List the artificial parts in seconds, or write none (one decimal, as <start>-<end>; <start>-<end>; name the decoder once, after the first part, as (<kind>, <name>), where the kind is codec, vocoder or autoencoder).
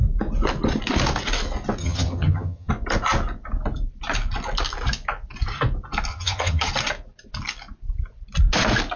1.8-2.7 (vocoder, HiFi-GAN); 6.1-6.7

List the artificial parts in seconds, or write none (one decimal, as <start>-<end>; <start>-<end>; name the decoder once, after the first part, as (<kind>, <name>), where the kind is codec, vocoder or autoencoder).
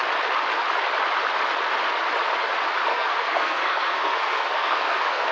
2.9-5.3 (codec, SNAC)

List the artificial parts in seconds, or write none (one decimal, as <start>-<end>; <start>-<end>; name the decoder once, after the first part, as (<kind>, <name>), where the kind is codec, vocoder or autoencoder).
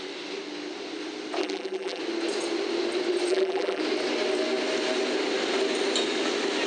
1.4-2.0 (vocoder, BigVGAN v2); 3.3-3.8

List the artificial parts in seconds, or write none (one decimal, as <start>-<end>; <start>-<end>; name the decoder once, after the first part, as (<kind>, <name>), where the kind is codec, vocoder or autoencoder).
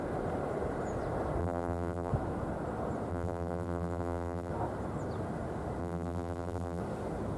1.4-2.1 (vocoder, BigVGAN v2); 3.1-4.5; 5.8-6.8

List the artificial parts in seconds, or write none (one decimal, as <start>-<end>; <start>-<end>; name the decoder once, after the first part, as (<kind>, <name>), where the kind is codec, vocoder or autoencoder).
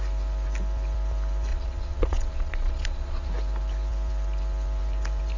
1.5-3.3 (vocoder, Vocos)